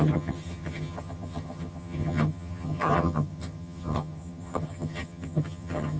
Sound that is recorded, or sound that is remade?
remade